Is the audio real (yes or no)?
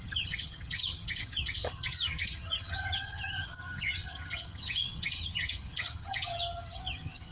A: no